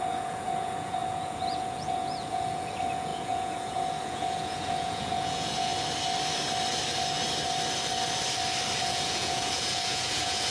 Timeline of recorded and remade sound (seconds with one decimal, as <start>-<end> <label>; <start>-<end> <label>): 0.0-5.7 remade; 5.7-8.8 recorded; 8.8-10.5 remade